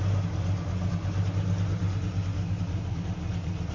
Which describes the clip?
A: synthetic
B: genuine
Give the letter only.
B